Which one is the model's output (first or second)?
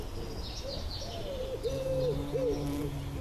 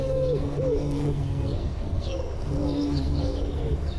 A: second